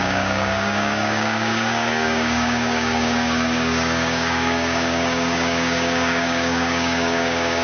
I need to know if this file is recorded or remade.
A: remade